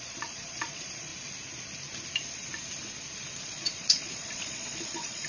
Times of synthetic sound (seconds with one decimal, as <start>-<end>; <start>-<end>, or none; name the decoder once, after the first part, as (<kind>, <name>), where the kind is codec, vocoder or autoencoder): 0.0-1.1 (vocoder, Vocos); 3.4-5.3